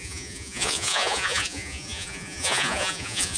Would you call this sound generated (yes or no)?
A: yes